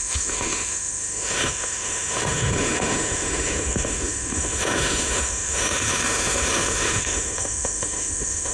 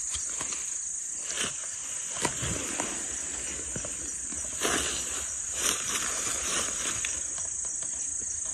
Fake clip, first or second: first